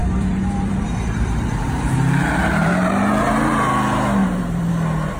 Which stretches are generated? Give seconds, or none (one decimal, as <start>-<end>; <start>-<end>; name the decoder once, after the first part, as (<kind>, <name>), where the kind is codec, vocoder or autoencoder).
0.0-3.1 (vocoder, BigVGAN v2); 4.2-4.7